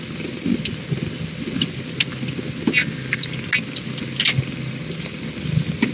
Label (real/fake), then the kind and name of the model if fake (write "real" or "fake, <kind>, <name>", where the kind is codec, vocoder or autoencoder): real